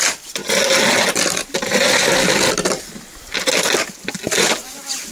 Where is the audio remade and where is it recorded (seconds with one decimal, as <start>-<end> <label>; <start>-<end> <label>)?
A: 0.0-5.1 recorded